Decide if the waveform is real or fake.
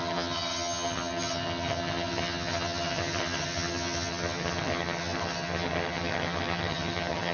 fake